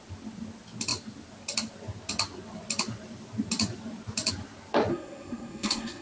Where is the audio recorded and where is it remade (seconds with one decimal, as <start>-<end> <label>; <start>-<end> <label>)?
0.0-4.9 recorded; 4.9-6.0 remade